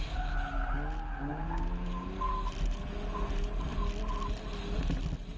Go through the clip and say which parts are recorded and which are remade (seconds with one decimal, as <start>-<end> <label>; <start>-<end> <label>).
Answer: 0.0-5.4 recorded